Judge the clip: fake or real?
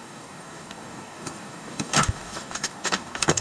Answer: fake